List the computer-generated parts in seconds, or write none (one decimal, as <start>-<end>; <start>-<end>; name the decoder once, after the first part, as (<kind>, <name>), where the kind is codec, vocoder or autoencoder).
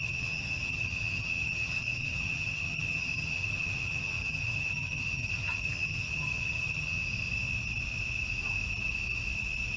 0.0-7.0 (vocoder, HiFi-GAN)